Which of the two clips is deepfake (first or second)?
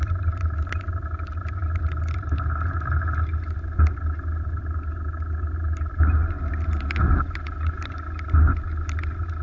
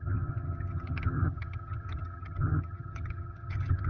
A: second